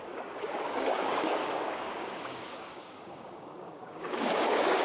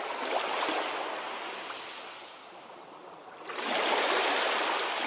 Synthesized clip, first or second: first